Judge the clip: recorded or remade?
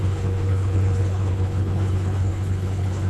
remade